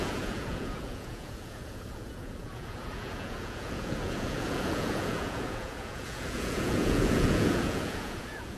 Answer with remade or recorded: remade